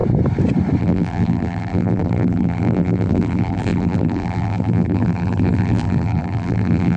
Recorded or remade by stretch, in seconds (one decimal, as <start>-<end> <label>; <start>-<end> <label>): 0.0-0.8 recorded; 0.8-7.0 remade